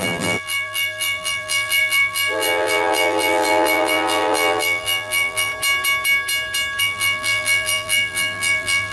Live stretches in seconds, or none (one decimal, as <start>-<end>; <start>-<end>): 5.5-6.8